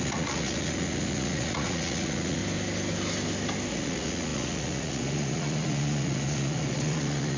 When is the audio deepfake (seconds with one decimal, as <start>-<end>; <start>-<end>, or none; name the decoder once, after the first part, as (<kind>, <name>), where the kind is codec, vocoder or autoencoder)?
0.0-2.4 (vocoder, Vocos); 3.7-7.4